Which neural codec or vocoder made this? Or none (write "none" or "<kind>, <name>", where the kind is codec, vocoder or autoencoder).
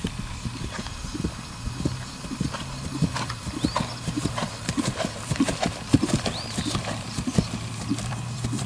vocoder, BigVGAN v2